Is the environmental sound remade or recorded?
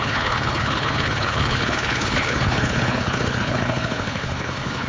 remade